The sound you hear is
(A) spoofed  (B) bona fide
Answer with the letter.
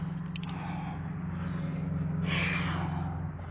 B